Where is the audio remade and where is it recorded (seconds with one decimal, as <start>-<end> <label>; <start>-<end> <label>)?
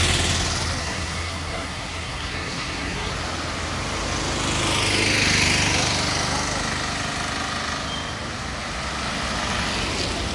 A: 0.0-0.8 recorded; 0.8-3.1 remade; 3.1-10.3 recorded